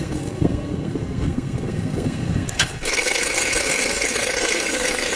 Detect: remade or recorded remade